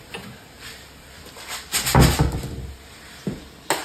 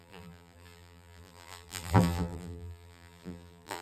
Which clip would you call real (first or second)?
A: first